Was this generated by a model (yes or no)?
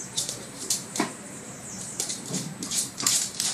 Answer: yes